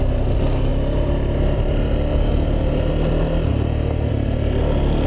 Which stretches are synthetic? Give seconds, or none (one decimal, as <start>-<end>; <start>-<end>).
0.7-2.9; 3.5-4.1